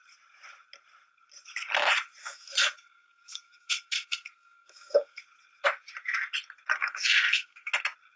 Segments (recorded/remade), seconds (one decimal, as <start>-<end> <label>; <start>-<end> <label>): 0.0-2.2 recorded; 2.2-5.2 remade; 5.2-6.7 recorded; 6.7-7.7 remade; 7.7-8.2 recorded